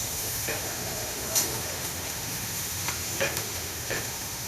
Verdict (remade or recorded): remade